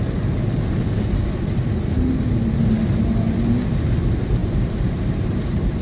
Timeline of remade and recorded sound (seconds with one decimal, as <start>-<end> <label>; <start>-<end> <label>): 0.0-4.4 recorded; 4.4-5.8 remade